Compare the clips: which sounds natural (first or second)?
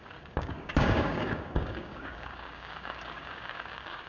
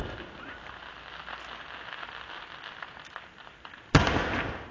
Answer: second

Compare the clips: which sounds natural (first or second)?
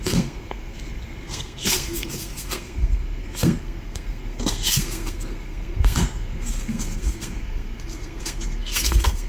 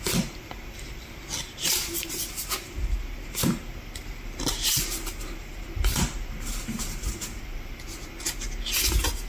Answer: second